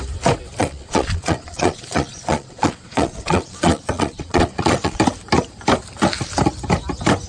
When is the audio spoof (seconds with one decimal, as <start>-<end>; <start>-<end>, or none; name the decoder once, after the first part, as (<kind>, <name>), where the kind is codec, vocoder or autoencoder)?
0.6-5.0 (vocoder, Vocos)